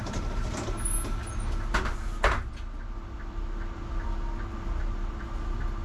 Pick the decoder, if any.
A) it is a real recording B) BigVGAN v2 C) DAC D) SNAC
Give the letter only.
A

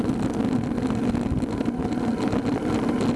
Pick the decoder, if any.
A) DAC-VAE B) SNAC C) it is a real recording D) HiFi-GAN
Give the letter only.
C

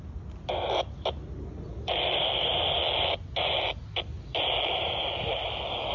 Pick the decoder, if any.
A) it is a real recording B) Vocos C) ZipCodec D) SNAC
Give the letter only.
A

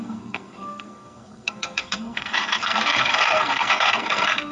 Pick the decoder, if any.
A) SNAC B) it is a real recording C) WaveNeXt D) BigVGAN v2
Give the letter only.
A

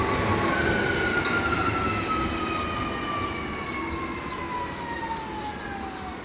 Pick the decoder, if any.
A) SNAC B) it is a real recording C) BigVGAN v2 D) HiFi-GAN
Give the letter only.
B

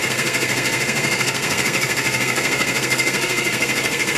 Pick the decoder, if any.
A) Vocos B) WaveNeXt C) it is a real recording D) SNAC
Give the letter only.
D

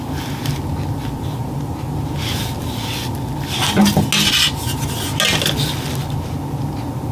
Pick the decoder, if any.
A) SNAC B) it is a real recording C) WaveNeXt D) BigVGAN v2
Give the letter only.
B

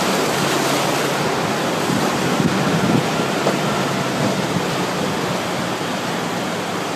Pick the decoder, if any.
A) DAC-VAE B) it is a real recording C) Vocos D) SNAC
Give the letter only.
B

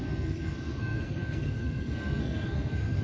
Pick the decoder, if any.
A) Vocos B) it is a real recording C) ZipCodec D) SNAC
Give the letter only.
D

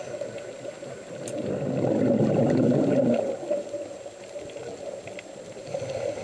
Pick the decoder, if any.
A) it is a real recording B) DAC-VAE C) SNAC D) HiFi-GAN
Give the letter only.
A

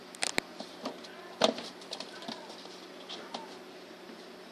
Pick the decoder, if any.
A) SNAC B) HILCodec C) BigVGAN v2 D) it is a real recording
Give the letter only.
D